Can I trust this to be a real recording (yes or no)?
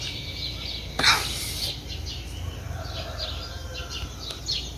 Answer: yes